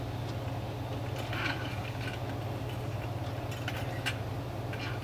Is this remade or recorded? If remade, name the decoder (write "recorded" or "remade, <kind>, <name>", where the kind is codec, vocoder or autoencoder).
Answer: recorded